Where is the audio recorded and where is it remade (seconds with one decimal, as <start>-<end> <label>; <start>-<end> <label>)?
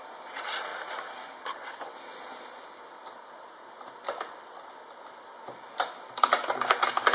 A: 0.0-7.1 recorded